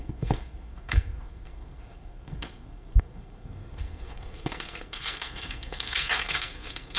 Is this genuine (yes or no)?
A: no